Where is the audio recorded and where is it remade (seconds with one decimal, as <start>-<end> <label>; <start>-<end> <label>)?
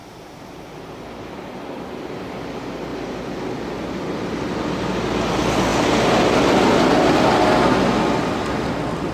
0.0-9.1 recorded